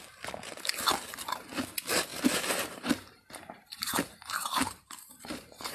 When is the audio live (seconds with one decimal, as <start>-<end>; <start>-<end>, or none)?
0.0-2.1